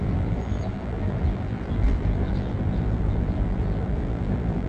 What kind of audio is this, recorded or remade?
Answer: remade